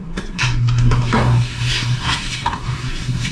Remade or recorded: remade